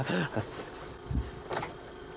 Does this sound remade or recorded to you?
recorded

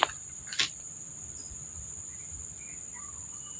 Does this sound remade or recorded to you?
recorded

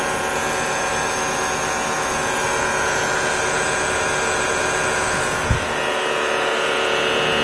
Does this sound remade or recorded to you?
remade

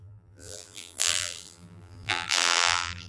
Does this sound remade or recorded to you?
remade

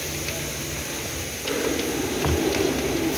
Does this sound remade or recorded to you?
recorded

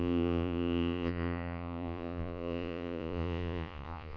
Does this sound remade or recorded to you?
remade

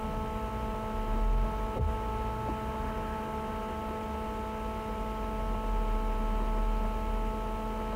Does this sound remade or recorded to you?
recorded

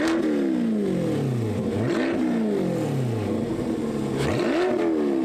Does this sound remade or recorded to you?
recorded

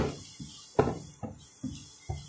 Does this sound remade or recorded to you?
recorded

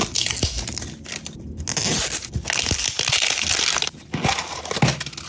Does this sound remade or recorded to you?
recorded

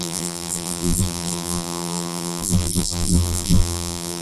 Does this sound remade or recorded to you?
remade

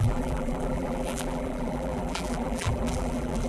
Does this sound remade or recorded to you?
remade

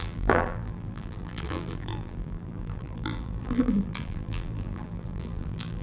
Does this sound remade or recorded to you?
remade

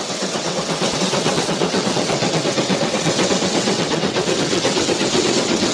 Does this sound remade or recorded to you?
remade